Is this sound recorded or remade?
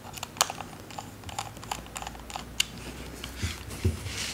recorded